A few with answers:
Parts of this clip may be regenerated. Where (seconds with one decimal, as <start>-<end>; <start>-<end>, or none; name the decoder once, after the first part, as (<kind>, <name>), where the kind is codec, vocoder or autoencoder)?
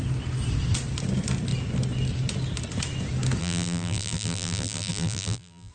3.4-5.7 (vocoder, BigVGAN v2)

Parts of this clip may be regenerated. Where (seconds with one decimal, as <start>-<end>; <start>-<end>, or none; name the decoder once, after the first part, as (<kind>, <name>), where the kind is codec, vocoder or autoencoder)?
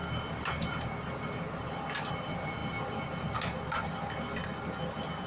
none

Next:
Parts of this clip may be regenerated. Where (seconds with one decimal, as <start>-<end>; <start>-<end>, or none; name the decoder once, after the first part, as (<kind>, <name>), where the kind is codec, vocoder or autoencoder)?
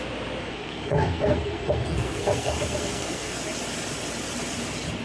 0.4-3.4 (codec, SNAC)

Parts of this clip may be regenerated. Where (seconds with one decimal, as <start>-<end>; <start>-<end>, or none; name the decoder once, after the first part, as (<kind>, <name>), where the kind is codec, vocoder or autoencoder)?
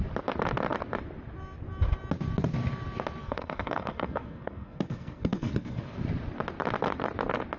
3.2-6.0 (codec, SNAC)